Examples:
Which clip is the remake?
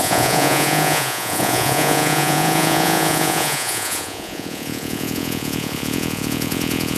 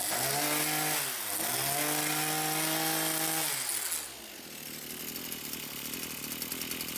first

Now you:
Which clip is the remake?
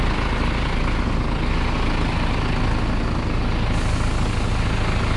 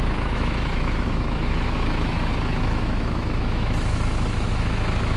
second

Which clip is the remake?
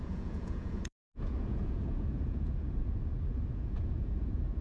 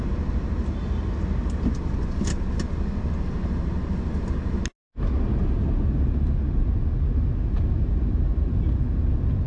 first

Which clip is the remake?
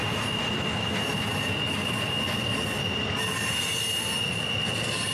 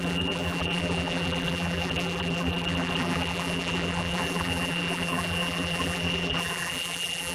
second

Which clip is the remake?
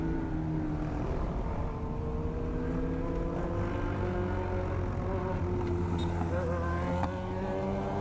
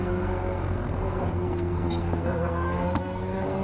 second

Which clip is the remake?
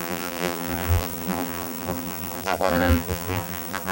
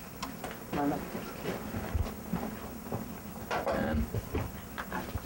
first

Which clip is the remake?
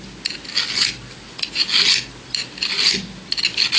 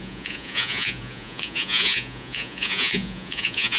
second